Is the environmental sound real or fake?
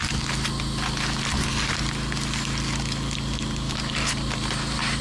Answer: real